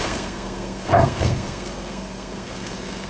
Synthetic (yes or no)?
yes